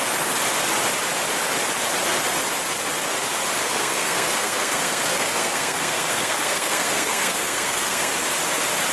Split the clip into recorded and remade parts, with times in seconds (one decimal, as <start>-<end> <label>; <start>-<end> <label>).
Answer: 0.0-3.6 recorded; 3.6-8.1 remade; 8.1-8.9 recorded

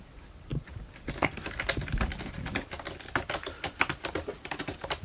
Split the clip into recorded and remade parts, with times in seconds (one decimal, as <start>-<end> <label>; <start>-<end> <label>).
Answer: 0.0-5.0 recorded

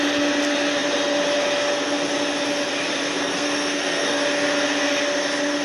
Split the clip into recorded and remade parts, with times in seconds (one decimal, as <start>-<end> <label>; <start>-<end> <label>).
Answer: 0.0-3.2 recorded; 3.2-4.2 remade; 4.2-5.6 recorded

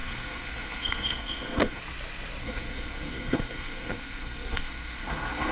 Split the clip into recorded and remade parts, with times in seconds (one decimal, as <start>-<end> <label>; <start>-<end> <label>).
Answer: 0.0-1.8 remade; 1.8-2.4 recorded; 2.4-5.5 remade

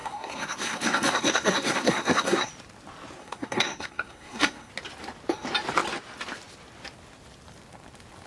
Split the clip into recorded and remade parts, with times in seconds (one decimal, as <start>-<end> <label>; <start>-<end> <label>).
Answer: 0.0-2.5 remade; 2.5-3.2 recorded; 3.2-4.7 remade; 4.7-8.3 recorded

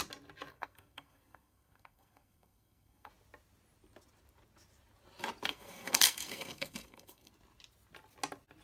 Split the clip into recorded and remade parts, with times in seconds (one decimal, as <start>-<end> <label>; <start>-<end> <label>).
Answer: 0.0-0.5 recorded; 0.5-3.1 remade; 3.1-5.5 recorded; 5.5-7.3 remade; 7.3-8.6 recorded

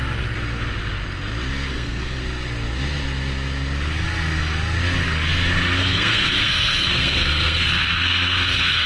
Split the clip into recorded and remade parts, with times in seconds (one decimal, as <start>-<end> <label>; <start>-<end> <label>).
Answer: 0.0-1.7 recorded; 1.7-2.2 remade; 2.2-5.8 recorded; 5.8-8.9 remade

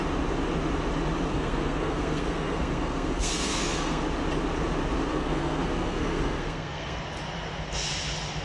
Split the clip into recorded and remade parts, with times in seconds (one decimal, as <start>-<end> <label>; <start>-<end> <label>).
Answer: 0.0-1.3 recorded; 1.3-4.0 remade; 4.0-5.1 recorded; 5.1-7.0 remade; 7.0-8.4 recorded